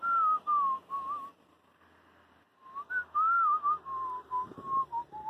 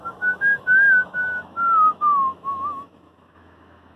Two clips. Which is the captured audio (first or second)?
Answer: first